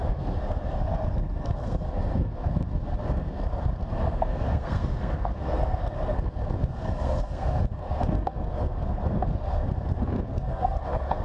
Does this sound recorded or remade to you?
remade